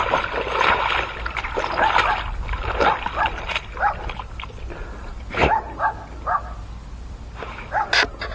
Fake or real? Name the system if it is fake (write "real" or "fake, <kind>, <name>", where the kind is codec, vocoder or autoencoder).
real